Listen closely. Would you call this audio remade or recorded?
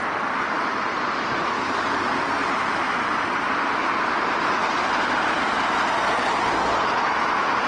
recorded